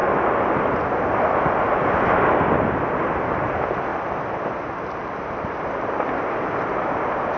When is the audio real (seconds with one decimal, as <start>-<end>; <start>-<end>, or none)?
0.0-7.4